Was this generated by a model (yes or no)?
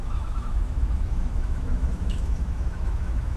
yes